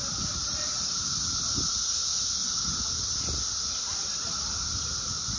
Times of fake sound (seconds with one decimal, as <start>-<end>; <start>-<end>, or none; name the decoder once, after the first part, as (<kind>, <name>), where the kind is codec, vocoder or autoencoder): none